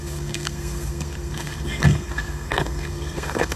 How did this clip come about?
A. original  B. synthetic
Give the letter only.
B